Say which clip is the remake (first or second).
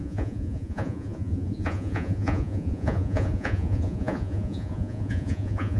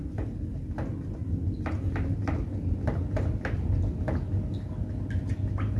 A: first